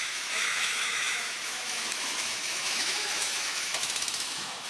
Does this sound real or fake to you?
fake